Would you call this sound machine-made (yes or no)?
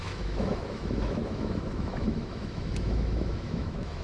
yes